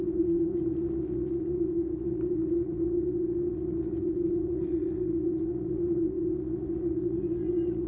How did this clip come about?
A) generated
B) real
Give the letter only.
A